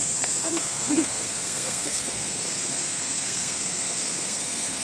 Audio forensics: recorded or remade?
remade